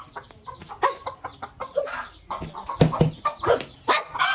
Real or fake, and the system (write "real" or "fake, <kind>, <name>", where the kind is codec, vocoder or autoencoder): real